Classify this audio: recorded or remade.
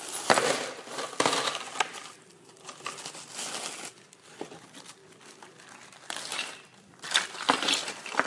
recorded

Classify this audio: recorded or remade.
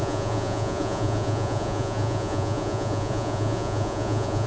remade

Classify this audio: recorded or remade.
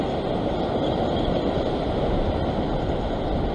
recorded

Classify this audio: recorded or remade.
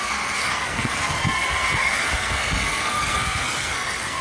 remade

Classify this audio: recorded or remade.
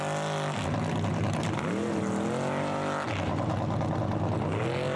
recorded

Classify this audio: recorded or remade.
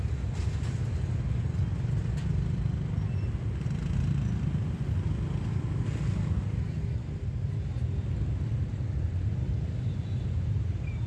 recorded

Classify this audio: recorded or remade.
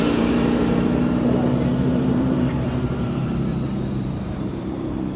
remade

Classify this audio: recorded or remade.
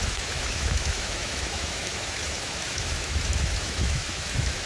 remade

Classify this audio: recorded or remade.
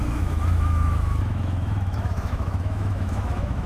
remade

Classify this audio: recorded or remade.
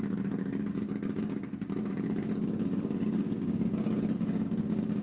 remade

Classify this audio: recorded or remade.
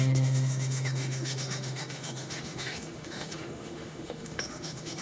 remade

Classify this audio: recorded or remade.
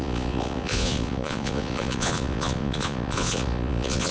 remade